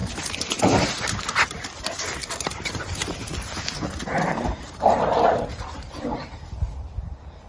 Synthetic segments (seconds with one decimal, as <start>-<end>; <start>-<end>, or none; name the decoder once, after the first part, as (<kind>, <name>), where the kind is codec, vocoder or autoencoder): 0.0-1.2 (vocoder, BigVGAN v2); 2.2-6.7